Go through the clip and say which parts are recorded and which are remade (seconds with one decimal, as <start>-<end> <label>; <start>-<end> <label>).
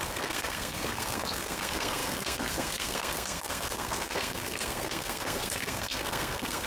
0.0-6.7 remade